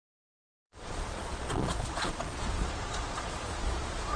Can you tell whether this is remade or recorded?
remade